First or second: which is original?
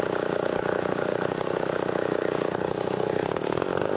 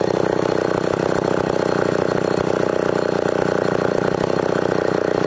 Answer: second